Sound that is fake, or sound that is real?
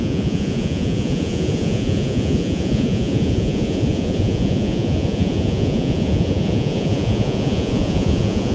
fake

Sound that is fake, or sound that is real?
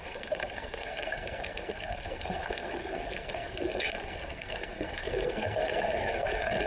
fake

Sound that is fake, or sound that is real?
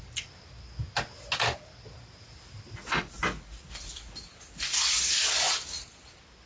real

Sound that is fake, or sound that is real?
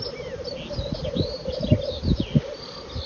real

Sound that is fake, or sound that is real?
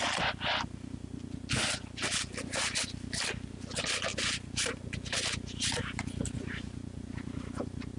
real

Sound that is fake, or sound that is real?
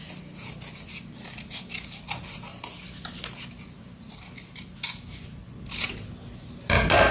real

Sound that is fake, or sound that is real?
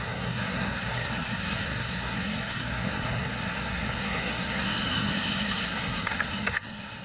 fake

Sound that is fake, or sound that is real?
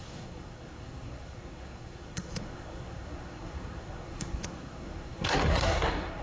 fake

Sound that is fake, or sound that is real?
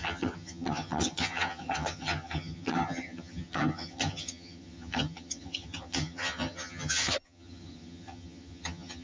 fake